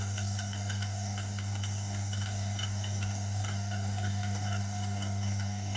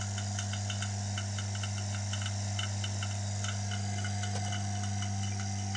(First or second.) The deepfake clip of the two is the first